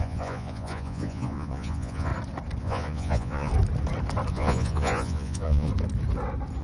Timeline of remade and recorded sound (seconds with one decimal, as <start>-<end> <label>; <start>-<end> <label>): 0.0-2.1 remade; 2.1-2.6 recorded; 2.6-3.5 remade; 3.5-4.3 recorded; 4.3-5.7 remade; 5.7-6.6 recorded